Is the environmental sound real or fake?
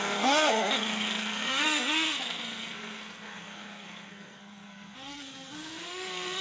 fake